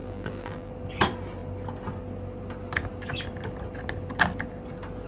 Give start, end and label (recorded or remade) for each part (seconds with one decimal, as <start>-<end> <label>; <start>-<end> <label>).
0.0-0.7 remade; 0.7-5.1 recorded